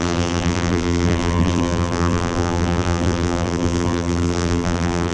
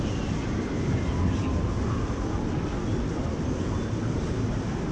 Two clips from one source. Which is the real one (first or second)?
second